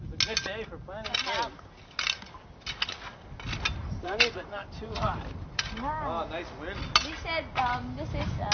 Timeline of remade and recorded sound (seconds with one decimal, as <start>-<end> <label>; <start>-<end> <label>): 0.0-3.8 recorded; 3.8-5.7 remade; 5.7-8.5 recorded